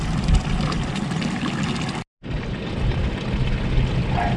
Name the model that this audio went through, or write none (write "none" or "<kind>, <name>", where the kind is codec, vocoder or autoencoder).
none